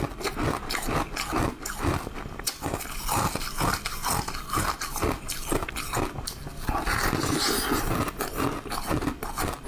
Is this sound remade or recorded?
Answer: recorded